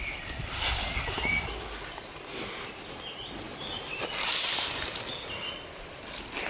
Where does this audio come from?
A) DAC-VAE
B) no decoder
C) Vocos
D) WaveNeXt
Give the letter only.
B